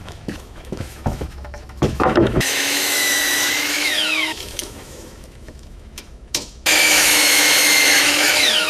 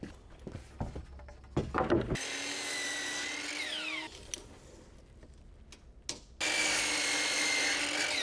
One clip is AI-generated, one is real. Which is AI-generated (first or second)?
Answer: first